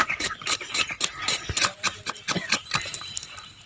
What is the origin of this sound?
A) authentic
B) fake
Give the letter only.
B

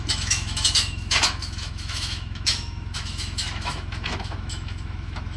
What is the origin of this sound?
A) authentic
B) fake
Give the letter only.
B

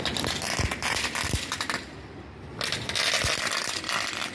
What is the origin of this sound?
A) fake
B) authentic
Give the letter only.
B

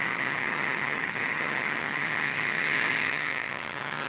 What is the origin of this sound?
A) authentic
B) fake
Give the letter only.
B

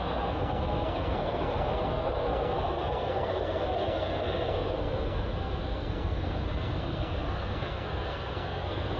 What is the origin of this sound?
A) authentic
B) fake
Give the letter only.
B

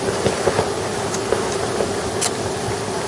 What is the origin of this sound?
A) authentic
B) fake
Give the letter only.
A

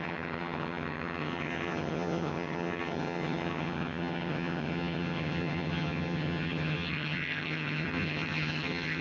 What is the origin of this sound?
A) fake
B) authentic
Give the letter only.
A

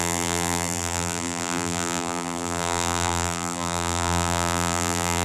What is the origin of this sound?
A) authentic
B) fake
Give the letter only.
B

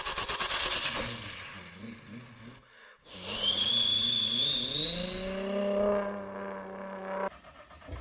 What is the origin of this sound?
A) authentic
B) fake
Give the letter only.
A